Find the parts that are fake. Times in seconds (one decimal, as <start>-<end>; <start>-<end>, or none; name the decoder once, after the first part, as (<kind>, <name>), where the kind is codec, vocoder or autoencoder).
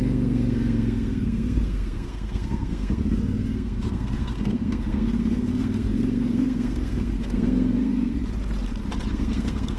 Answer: 0.0-8.2 (codec, SNAC); 9.1-9.8